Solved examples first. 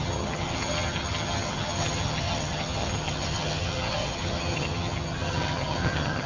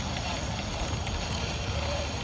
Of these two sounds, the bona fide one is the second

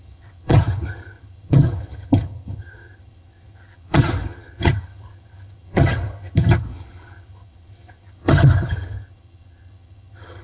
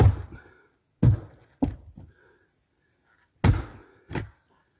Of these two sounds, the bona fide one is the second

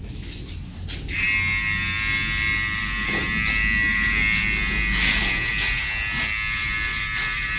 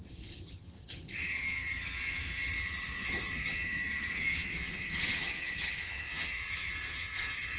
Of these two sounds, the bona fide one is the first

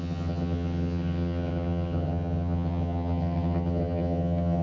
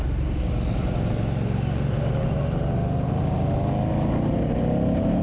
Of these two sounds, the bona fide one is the second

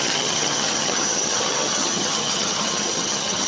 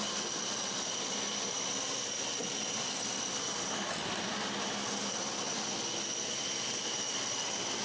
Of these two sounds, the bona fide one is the second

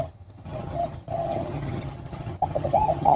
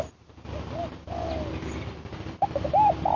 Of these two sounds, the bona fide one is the second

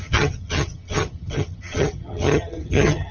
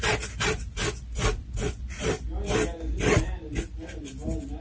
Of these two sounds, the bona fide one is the second